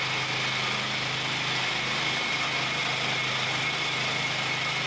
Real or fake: real